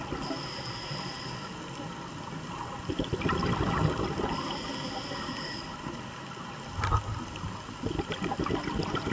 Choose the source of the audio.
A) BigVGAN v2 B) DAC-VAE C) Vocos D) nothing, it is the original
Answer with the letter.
D